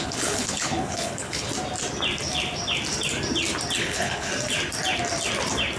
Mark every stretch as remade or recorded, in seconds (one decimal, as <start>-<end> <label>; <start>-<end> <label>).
0.0-1.5 remade; 1.5-3.8 recorded; 3.8-4.3 remade; 4.3-5.8 recorded